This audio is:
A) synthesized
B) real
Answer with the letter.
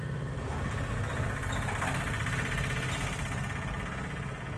B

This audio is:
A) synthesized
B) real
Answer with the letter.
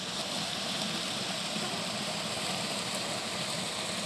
B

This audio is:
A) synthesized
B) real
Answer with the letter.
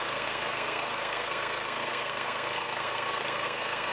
A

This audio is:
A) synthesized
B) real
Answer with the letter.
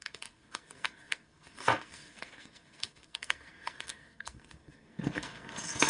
A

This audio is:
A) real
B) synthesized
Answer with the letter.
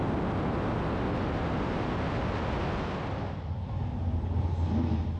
A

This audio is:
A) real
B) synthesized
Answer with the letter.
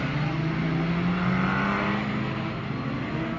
A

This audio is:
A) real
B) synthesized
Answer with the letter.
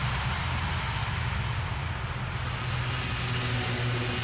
A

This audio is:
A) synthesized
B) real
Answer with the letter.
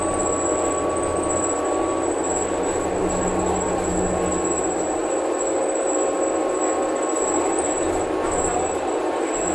B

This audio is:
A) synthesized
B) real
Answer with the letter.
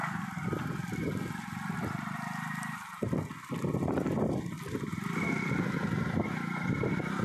B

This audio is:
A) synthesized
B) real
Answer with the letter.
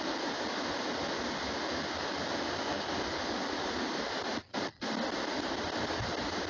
B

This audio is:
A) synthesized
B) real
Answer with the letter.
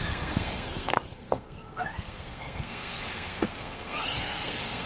A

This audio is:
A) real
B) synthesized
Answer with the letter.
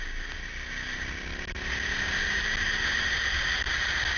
A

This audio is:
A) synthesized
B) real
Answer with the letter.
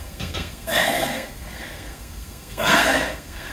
A